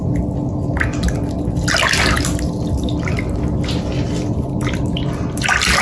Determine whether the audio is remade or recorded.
recorded